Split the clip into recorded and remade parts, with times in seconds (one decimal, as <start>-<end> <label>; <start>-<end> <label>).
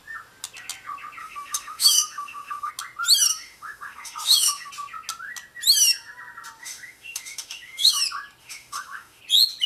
0.0-1.2 recorded; 1.2-2.7 remade; 2.7-3.3 recorded; 3.3-4.7 remade; 4.7-6.6 recorded; 6.6-8.0 remade; 8.0-8.4 recorded; 8.4-9.2 remade; 9.2-9.7 recorded